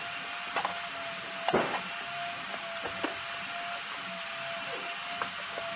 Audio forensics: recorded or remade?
recorded